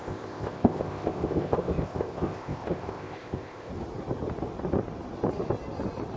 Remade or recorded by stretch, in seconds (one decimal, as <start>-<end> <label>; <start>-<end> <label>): 0.0-3.7 remade; 3.7-6.2 recorded